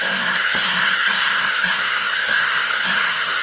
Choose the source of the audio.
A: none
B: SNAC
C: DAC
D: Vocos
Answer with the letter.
B